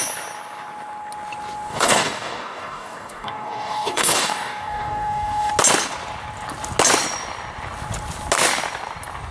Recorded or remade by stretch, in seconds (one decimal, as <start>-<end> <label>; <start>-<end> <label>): 0.0-1.7 recorded; 1.7-5.5 remade; 5.5-9.3 recorded